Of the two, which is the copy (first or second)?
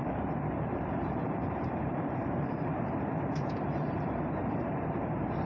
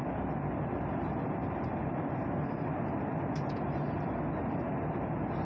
first